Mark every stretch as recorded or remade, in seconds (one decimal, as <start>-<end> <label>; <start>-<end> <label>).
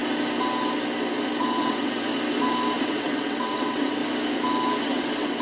0.0-1.4 recorded; 1.4-2.1 remade; 2.1-2.8 recorded; 2.8-4.0 remade; 4.0-4.8 recorded; 4.8-5.4 remade